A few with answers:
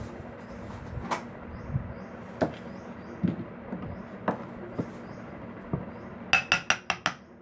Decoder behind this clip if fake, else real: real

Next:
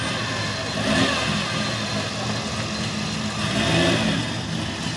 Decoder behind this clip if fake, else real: real